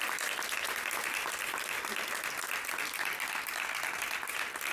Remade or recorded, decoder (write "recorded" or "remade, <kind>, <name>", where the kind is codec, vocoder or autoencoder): recorded